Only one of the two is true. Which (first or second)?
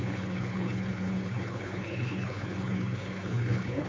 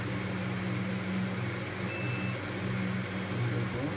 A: second